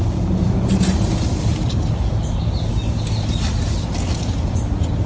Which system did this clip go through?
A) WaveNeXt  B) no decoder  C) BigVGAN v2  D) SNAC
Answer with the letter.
B